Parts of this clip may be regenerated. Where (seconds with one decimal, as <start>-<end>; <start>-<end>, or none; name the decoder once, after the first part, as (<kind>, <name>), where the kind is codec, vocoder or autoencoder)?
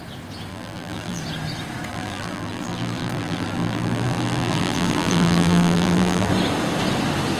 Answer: 0.5-1.2 (vocoder, BigVGAN v2); 1.9-6.3